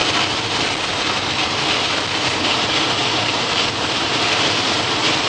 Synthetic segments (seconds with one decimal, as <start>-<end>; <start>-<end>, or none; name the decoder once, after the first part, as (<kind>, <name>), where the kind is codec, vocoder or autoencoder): 3.2-5.3 (vocoder, BigVGAN v2)